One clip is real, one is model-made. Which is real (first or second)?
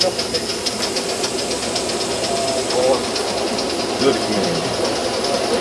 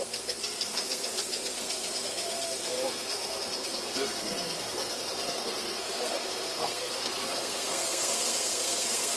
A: first